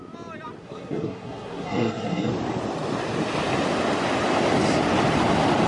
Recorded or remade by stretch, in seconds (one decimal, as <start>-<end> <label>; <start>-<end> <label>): 0.0-0.6 recorded; 0.6-2.3 remade; 2.3-5.7 recorded